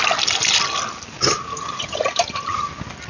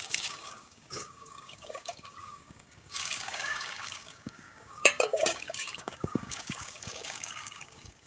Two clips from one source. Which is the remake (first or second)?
second